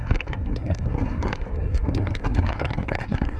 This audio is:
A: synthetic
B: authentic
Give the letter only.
A